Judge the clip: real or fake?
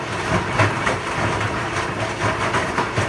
fake